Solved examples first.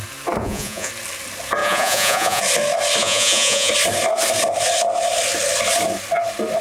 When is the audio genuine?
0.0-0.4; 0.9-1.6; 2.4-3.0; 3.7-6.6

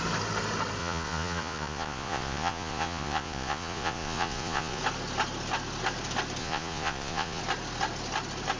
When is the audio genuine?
0.0-0.8; 4.8-6.4; 7.4-8.6

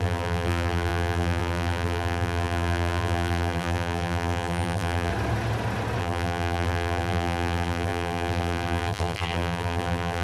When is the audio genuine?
5.1-6.0